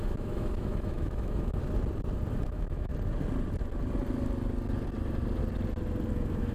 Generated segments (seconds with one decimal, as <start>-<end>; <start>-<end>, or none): 0.0-1.6; 2.3-2.9; 6.1-6.5